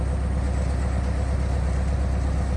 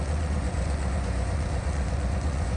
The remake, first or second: second